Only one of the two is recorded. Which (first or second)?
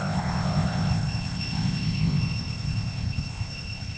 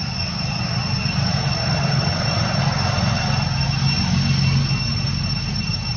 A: second